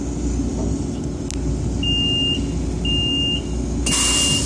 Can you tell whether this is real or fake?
real